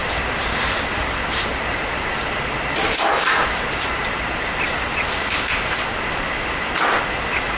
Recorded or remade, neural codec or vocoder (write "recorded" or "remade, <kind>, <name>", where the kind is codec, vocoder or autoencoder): recorded